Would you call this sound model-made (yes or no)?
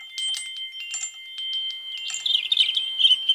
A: no